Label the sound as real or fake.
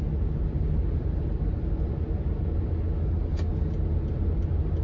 real